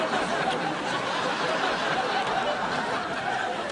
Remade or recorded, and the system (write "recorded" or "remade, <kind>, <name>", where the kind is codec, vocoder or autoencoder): recorded